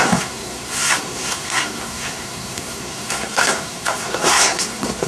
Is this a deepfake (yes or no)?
yes